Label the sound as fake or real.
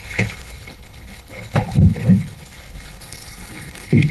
fake